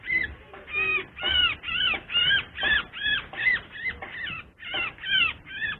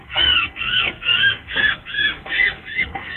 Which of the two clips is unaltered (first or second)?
first